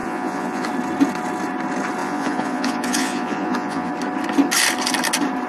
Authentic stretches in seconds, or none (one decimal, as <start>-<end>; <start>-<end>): 0.7-2.0; 3.9-5.5